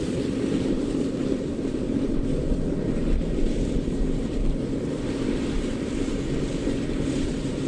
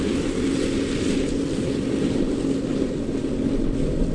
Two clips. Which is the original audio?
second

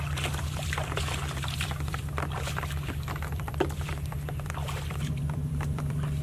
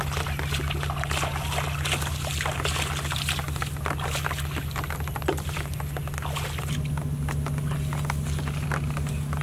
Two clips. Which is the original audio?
second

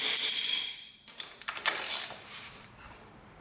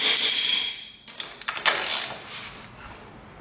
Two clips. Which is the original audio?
second